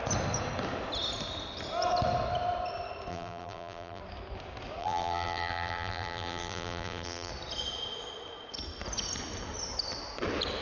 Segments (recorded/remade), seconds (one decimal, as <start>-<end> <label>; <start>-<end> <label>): 0.0-3.1 recorded; 3.1-4.0 remade; 4.0-4.8 recorded; 4.8-7.3 remade; 7.3-10.6 recorded